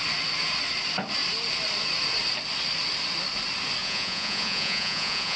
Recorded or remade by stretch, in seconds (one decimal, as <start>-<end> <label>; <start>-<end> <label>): 0.0-3.8 recorded; 3.8-5.4 remade